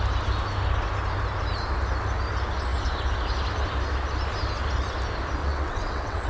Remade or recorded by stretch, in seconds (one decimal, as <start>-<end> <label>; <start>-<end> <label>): 0.0-5.4 recorded; 5.4-6.3 remade